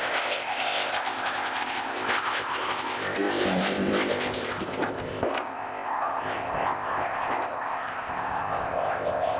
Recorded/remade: remade